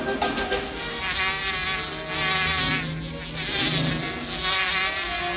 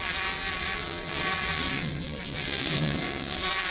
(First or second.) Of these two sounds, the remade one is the second